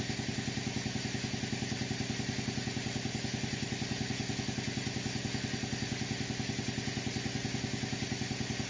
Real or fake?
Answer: real